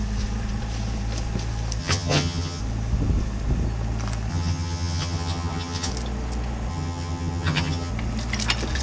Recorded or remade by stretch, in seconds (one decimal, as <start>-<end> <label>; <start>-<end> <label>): 0.0-1.8 recorded; 1.8-2.6 remade; 2.6-4.3 recorded; 4.3-5.9 remade; 5.9-6.7 recorded; 6.7-7.9 remade; 7.9-8.8 recorded